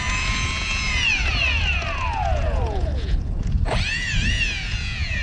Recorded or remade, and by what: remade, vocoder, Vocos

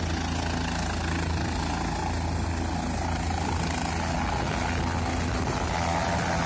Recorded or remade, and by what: recorded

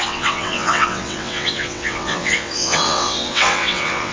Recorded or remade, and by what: remade, vocoder, WaveNeXt